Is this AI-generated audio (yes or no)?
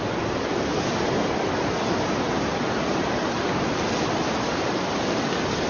no